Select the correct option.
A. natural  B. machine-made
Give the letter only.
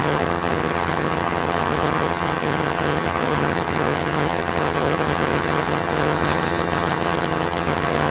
B